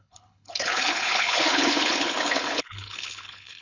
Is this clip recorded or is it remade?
remade